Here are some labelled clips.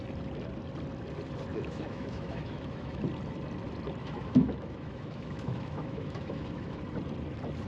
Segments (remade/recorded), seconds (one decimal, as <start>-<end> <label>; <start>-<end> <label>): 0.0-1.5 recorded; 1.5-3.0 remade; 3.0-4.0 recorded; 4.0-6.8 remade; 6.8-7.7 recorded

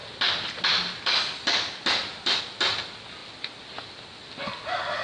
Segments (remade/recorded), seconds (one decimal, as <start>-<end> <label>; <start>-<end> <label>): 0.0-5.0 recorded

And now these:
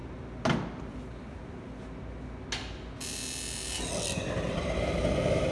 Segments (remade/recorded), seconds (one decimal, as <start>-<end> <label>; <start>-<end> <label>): 0.0-5.5 recorded